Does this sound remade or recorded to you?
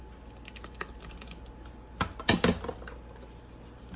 recorded